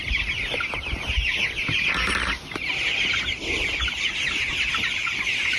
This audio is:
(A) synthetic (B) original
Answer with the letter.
B